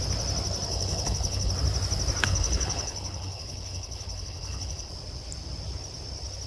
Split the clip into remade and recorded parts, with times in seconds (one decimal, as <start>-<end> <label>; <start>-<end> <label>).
0.0-0.7 recorded; 0.7-1.5 remade; 1.5-2.2 recorded; 2.2-4.9 remade; 4.9-6.5 recorded